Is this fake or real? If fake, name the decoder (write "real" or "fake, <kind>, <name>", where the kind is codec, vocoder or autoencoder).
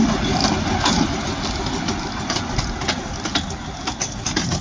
real